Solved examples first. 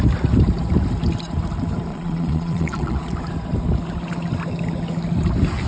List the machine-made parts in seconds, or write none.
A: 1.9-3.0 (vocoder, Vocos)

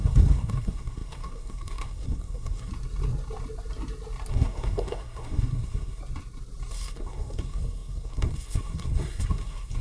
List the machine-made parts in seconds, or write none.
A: 0.0-2.7 (codec, SNAC); 4.3-6.0; 6.7-9.8

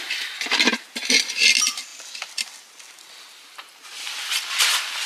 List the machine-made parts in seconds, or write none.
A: none

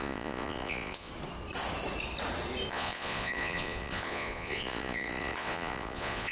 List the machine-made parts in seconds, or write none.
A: 0.0-1.1 (vocoder, Vocos); 2.7-6.3

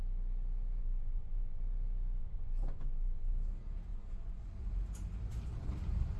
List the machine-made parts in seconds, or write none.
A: 0.8-1.6 (vocoder, Vocos); 2.2-3.3; 3.9-4.7